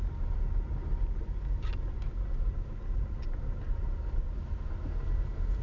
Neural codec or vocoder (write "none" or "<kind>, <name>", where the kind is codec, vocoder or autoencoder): none